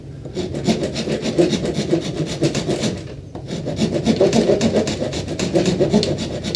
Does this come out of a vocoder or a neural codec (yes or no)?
no